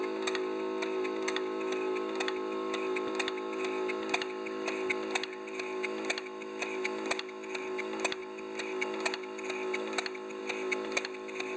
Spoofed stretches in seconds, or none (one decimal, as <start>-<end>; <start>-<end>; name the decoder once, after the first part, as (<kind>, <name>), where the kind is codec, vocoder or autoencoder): none